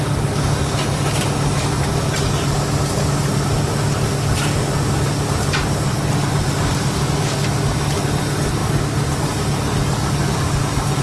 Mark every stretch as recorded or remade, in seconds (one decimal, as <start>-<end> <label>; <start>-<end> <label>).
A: 0.0-11.0 recorded